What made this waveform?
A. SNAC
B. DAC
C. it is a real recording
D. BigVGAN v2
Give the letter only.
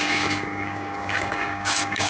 B